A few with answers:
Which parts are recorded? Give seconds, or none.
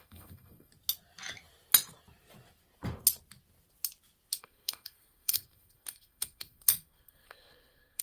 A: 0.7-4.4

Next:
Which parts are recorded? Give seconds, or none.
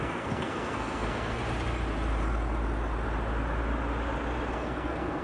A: 1.4-4.5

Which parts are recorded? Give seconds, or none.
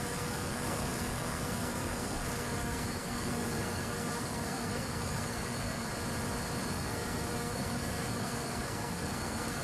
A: 5.9-6.7